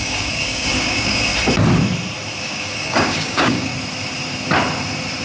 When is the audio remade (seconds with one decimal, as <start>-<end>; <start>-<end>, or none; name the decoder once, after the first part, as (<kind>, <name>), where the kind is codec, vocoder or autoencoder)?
0.0-1.3 (codec, DAC); 2.4-3.7